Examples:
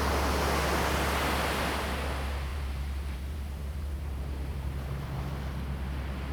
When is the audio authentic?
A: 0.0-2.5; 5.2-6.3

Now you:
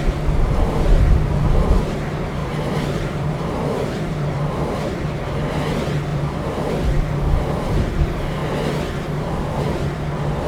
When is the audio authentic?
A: 0.0-2.4; 4.9-6.1; 6.7-10.5